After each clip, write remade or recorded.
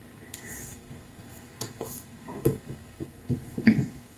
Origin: remade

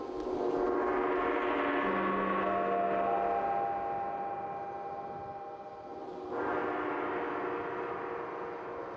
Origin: recorded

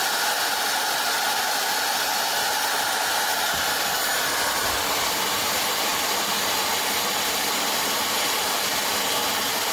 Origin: recorded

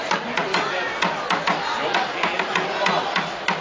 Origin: recorded